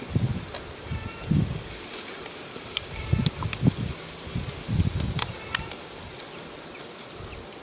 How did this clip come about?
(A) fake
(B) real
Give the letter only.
B